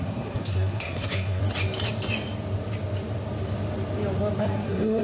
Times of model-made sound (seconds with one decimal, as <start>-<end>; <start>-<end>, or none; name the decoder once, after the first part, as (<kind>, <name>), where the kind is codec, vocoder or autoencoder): 0.0-1.4 (codec, SNAC); 4.4-5.0